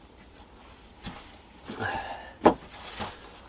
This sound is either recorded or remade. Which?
recorded